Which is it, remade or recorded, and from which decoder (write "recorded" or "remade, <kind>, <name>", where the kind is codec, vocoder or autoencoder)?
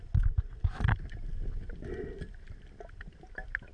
recorded